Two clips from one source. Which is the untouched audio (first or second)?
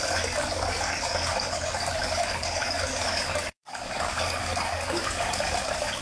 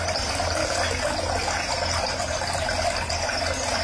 second